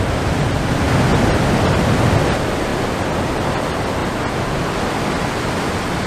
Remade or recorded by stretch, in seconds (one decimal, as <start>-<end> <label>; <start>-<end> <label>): 0.0-6.1 recorded